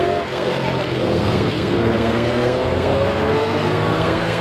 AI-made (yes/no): yes